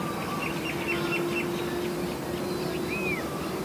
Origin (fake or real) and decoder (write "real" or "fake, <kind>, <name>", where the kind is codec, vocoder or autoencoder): real